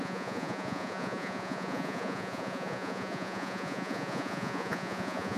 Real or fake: fake